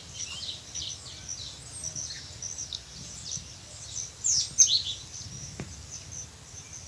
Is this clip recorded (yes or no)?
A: yes